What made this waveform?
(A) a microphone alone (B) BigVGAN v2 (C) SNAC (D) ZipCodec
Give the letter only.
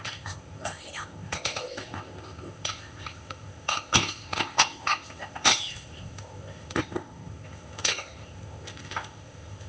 D